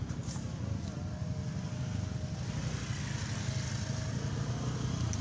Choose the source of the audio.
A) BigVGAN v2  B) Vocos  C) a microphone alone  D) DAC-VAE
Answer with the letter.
C